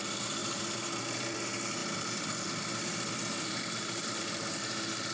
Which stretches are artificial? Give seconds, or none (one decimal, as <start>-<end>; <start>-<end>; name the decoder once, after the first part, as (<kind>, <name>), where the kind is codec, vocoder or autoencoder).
0.4-1.4 (vocoder, BigVGAN v2); 1.8-4.6